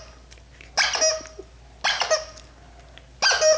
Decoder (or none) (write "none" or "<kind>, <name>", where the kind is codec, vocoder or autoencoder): none